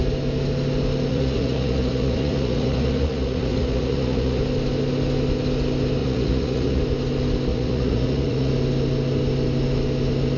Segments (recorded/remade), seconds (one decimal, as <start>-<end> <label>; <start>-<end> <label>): 0.0-1.1 recorded; 1.1-4.4 remade; 4.4-6.0 recorded; 6.0-6.8 remade; 6.8-7.5 recorded; 7.5-8.5 remade; 8.5-10.4 recorded